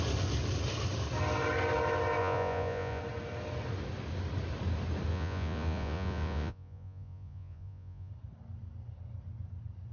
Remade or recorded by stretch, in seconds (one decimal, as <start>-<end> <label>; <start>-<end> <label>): 0.0-2.2 recorded; 2.2-3.0 remade; 3.0-5.1 recorded; 5.1-8.1 remade; 8.1-9.9 recorded